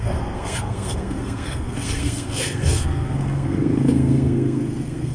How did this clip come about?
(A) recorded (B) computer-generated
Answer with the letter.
B